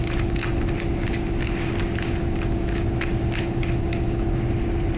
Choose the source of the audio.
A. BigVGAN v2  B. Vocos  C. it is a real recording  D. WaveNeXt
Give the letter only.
C